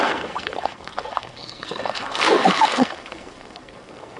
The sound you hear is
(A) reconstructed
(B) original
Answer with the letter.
A